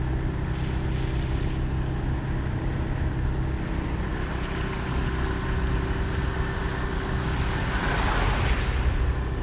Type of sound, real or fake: real